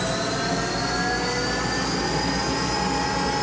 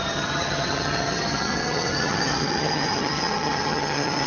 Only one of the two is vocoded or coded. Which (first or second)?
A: second